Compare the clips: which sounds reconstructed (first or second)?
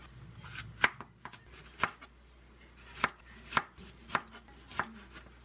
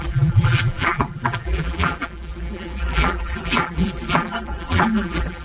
second